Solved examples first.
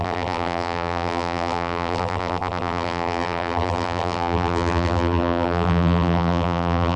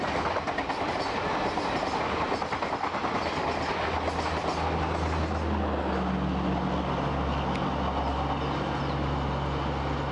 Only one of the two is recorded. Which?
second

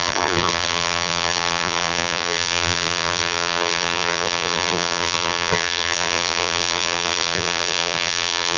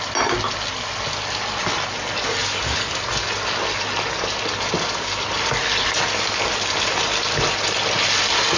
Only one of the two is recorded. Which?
second